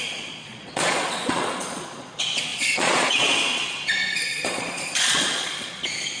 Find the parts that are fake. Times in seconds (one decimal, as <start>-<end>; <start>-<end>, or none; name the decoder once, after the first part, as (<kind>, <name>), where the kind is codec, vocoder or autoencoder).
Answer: 0.0-6.2 (vocoder, Vocos)